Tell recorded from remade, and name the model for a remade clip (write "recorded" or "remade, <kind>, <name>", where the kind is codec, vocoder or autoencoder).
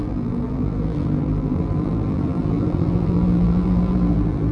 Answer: remade, vocoder, BigVGAN v2